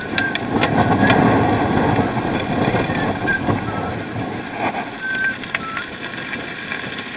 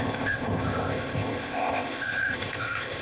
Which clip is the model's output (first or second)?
second